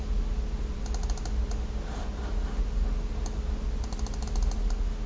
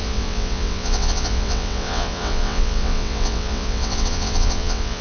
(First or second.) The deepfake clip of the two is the second